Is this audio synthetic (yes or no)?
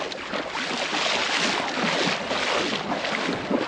no